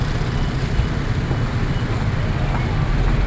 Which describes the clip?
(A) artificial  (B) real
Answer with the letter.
B